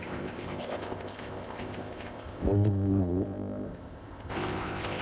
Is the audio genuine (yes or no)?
no